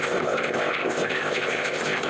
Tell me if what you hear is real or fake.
fake